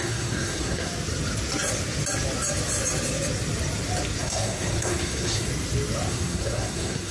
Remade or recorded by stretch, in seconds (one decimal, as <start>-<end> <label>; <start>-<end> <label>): 0.0-0.9 remade; 0.9-4.2 recorded; 4.2-5.5 remade; 5.5-6.1 recorded; 6.1-7.1 remade